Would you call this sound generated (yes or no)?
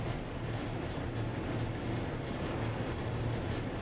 no